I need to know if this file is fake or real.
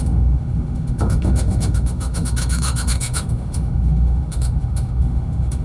fake